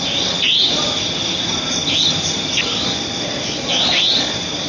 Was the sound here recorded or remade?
recorded